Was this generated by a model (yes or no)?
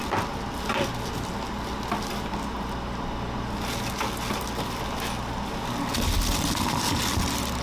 no